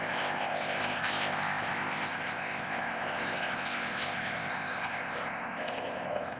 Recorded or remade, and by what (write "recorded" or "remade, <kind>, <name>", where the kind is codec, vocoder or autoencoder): remade, codec, ZipCodec